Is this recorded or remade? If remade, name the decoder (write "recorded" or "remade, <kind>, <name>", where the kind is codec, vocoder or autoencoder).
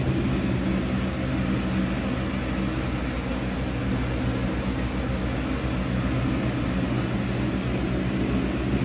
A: recorded